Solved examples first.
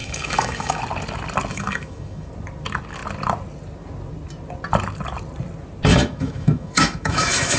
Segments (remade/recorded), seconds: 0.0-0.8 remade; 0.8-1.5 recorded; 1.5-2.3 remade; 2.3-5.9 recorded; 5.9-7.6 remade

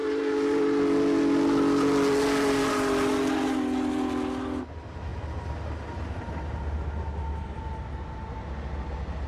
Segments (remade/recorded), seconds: 0.0-9.3 recorded

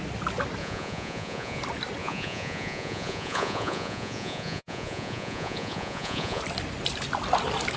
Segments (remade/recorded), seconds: 0.0-0.6 recorded; 0.6-1.6 remade; 1.6-2.0 recorded; 2.0-6.4 remade; 6.4-7.8 recorded

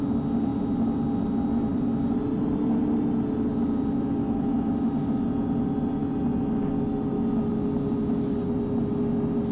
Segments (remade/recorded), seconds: 0.0-9.5 recorded

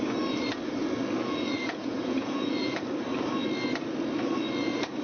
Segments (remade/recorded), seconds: 0.0-1.2 recorded; 1.2-2.8 remade; 2.8-5.0 recorded

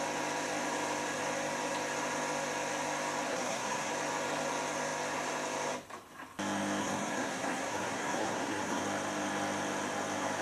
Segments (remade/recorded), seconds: 0.0-3.3 recorded; 3.3-3.9 remade; 3.9-6.8 recorded; 6.8-8.8 remade; 8.8-10.4 recorded

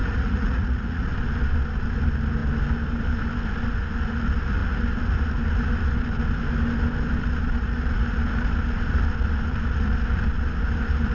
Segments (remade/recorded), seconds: 0.0-1.1 remade; 1.1-11.1 recorded